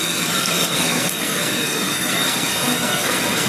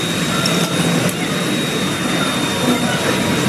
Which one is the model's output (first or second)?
first